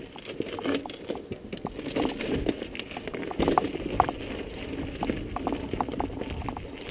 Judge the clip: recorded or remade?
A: recorded